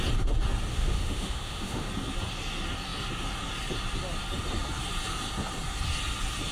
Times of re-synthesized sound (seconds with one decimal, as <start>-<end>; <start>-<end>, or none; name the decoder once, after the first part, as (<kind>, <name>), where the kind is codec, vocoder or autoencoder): 0.7-1.9 (autoencoder, DAC-VAE)